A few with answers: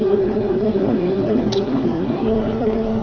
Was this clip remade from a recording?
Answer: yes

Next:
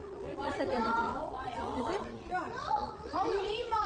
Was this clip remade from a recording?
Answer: yes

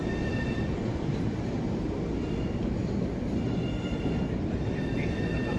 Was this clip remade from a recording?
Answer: no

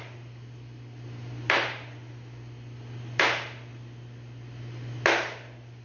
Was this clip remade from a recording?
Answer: no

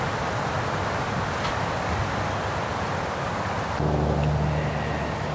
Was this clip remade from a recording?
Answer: no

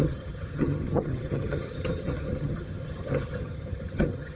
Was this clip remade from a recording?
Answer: yes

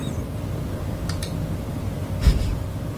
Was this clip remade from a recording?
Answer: no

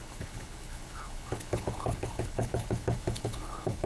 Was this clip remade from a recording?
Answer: yes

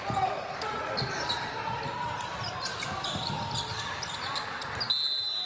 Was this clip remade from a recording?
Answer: no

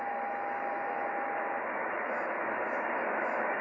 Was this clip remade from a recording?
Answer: yes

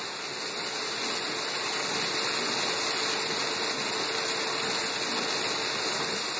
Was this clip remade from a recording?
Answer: no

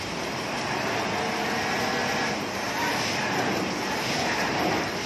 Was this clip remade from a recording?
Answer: no